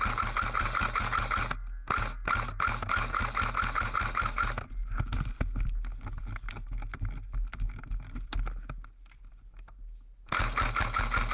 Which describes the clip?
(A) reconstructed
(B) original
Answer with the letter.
B